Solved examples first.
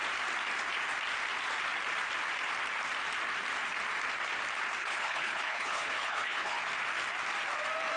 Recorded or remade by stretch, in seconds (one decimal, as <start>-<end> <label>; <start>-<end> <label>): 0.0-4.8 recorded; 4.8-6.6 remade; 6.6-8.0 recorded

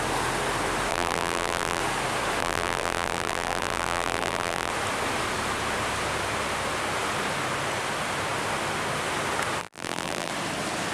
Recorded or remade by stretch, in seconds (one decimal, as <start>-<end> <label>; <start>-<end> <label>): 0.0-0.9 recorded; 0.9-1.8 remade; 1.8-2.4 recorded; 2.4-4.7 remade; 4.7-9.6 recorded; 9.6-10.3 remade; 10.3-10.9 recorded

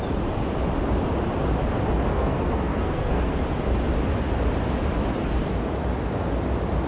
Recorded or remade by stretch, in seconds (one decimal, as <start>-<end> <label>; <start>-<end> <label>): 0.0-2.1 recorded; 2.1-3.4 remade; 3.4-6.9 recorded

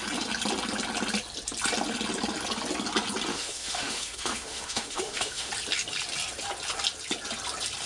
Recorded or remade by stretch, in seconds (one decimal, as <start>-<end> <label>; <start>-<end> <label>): 0.0-3.3 recorded; 3.3-5.5 remade; 5.5-7.9 recorded

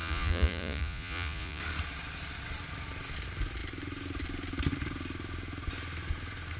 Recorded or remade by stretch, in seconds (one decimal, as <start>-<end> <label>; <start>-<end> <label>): 0.0-1.6 remade; 1.6-6.6 recorded

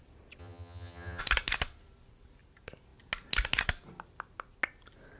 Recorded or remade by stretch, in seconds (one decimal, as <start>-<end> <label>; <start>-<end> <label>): 0.0-0.4 recorded; 0.4-1.2 remade; 1.2-5.2 recorded

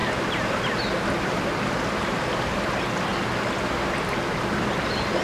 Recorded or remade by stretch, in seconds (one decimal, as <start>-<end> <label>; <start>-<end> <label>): 0.0-5.2 recorded

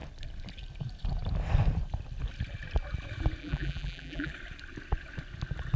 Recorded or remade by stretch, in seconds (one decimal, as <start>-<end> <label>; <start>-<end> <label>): 0.0-3.4 recorded; 3.4-4.3 remade; 4.3-5.8 recorded